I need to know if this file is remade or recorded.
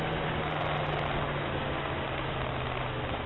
recorded